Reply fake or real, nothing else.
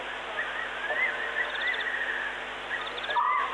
real